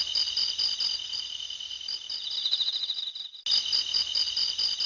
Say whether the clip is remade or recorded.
recorded